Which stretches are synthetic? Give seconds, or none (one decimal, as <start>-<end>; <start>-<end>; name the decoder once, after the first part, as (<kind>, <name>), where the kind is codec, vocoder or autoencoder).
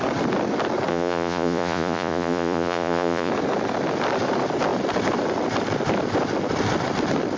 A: 0.9-3.3 (vocoder, Vocos)